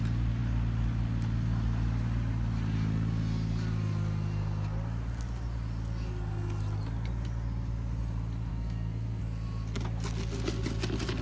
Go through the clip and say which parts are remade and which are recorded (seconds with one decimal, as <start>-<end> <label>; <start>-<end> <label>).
0.0-8.5 recorded; 8.5-9.2 remade; 9.2-11.2 recorded